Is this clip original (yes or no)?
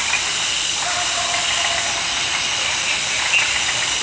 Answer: yes